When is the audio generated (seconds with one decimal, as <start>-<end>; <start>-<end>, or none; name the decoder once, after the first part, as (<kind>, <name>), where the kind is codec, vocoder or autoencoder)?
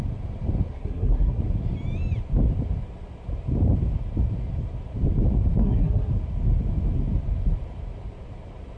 0.7-1.4 (codec, SNAC); 5.6-6.1